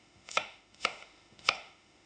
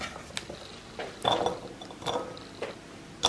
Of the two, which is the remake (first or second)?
first